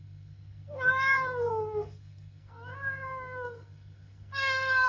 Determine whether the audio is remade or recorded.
remade